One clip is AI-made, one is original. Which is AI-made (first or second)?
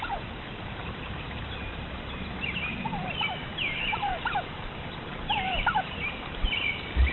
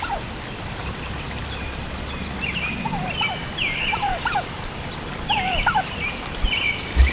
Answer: first